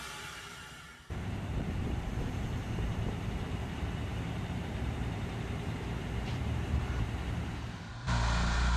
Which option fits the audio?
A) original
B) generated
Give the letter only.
B